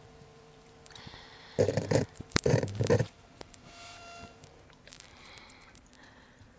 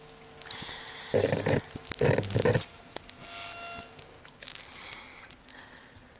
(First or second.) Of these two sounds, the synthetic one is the first